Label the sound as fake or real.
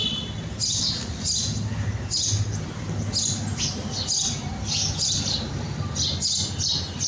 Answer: real